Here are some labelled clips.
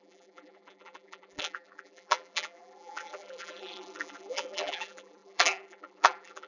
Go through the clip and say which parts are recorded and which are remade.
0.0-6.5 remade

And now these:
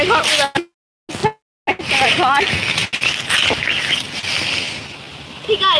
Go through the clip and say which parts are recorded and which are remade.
0.0-5.8 recorded

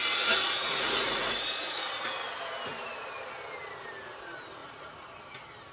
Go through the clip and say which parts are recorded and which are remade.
0.0-1.9 remade; 1.9-4.6 recorded; 4.6-5.1 remade; 5.1-5.7 recorded

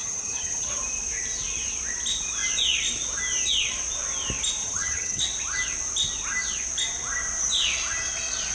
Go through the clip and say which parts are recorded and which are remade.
0.0-0.8 remade; 0.8-4.6 recorded; 4.6-5.2 remade; 5.2-8.5 recorded

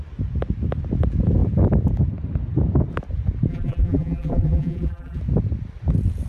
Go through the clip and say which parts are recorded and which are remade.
0.0-3.5 recorded; 3.5-5.2 remade; 5.2-6.3 recorded

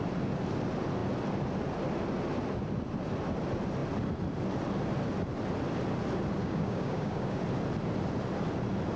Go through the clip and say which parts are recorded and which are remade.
0.0-6.4 recorded; 6.4-7.4 remade; 7.4-9.0 recorded

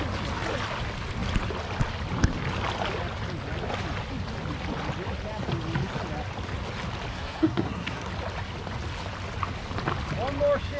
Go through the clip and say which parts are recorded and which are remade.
0.0-7.1 recorded; 7.1-8.1 remade; 8.1-10.8 recorded

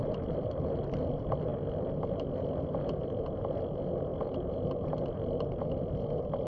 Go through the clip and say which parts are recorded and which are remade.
0.0-6.5 recorded